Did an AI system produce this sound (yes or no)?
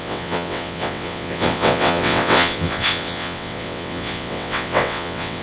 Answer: yes